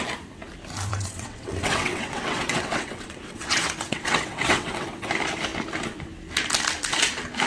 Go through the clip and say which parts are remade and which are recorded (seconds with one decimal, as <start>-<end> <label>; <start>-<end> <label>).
0.0-0.9 recorded; 0.9-5.1 remade; 5.1-7.5 recorded